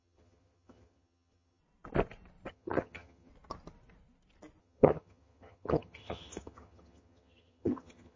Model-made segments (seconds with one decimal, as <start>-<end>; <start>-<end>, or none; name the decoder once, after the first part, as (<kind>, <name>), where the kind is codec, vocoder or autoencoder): 0.0-1.6 (vocoder, HiFi-GAN); 2.5-3.3; 4.6-8.2